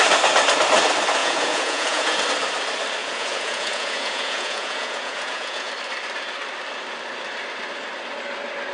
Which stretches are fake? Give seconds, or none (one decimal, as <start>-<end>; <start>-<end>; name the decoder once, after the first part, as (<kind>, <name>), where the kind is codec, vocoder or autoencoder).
1.2-2.2 (vocoder, Vocos); 3.0-5.7